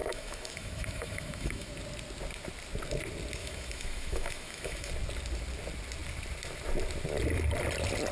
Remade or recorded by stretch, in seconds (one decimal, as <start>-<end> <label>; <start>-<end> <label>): 0.0-1.7 remade; 1.7-3.4 recorded; 3.4-4.9 remade; 4.9-8.1 recorded